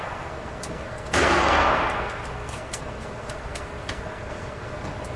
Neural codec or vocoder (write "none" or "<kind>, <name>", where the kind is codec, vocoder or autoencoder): codec, SNAC